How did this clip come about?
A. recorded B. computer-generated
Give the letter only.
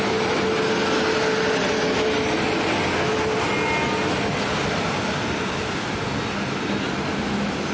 A